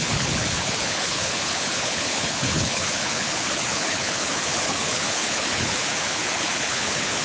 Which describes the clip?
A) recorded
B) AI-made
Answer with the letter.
B